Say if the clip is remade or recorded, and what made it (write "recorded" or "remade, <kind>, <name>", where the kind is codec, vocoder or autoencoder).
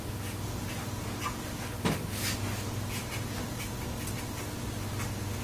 recorded